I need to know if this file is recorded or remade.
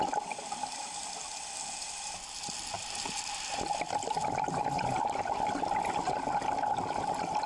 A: recorded